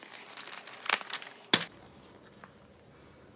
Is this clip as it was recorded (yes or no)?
yes